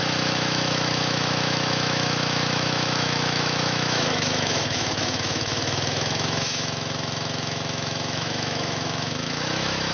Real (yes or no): no